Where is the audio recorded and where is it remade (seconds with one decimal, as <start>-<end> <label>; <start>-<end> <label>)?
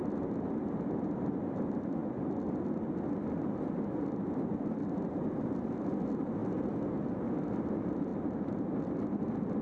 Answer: 0.0-9.6 recorded